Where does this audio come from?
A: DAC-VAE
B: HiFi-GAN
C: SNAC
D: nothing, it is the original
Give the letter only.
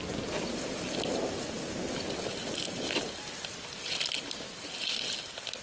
D